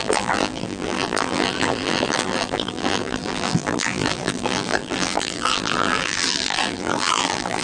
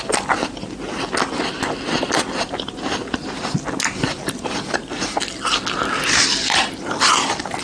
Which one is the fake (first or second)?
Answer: first